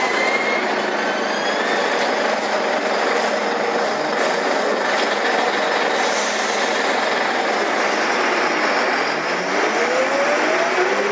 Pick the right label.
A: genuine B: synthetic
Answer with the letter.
A